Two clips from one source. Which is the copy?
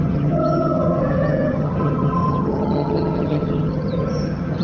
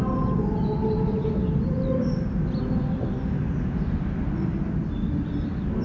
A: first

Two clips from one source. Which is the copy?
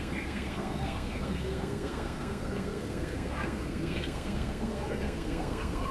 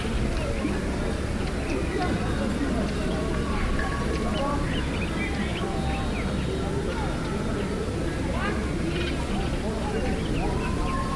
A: first